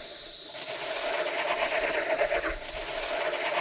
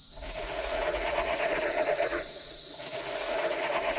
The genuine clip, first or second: first